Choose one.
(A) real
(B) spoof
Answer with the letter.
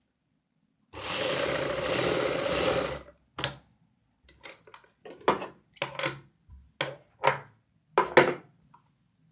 A